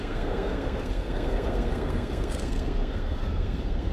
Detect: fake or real fake